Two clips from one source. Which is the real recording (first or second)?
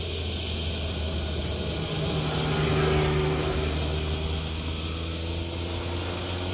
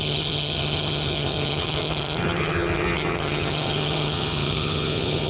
first